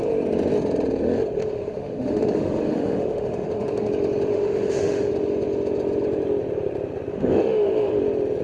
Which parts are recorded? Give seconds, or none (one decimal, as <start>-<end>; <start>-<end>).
0.0-1.4; 3.9-4.3; 5.1-7.1; 8.0-8.4